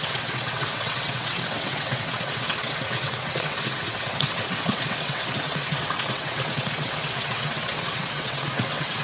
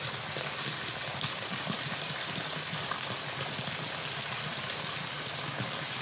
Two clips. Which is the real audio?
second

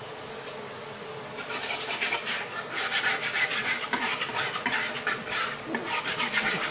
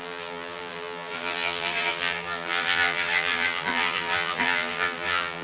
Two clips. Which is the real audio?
first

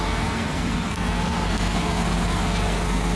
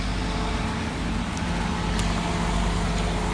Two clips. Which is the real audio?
second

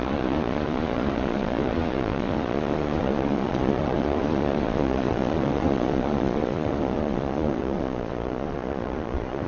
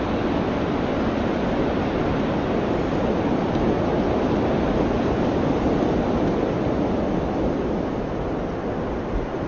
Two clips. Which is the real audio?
second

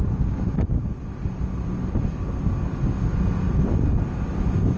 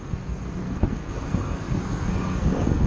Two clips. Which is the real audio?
first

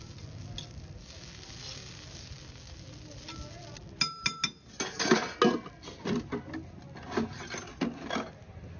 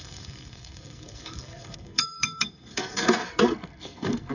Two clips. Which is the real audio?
first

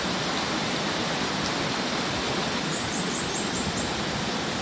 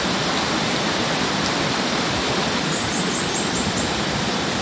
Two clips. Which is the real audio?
first